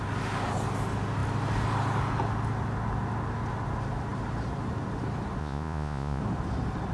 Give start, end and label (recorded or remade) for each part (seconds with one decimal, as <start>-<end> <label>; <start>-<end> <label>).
0.0-5.4 recorded; 5.4-6.2 remade; 6.2-6.9 recorded